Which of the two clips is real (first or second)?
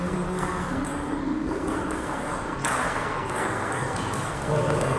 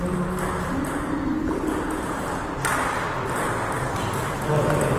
second